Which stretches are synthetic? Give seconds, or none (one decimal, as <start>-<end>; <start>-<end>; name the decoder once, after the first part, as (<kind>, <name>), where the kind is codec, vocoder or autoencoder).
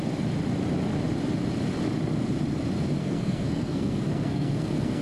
3.0-5.0 (codec, SNAC)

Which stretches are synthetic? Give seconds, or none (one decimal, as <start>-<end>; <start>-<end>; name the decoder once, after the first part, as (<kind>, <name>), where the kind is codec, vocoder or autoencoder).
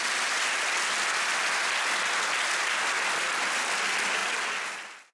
none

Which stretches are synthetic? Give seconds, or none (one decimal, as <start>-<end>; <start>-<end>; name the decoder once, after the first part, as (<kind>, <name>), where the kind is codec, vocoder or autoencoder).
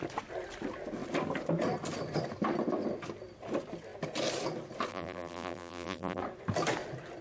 4.9-6.2 (vocoder, BigVGAN v2)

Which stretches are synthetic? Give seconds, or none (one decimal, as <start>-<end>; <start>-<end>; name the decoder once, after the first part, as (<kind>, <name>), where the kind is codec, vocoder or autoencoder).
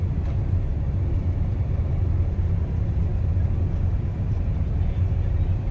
none